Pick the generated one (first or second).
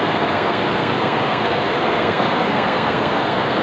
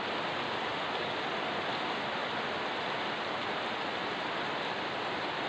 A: first